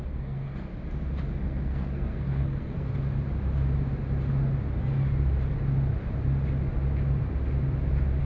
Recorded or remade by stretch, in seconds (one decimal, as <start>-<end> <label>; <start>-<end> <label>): 0.0-0.7 remade; 0.7-1.4 recorded; 1.4-2.9 remade; 2.9-8.2 recorded